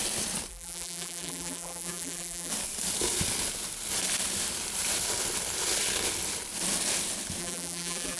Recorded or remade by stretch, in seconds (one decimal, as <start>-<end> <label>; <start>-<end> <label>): 0.0-0.5 recorded; 0.5-2.5 remade; 2.5-7.4 recorded; 7.4-8.2 remade